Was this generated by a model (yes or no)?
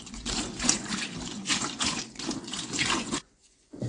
yes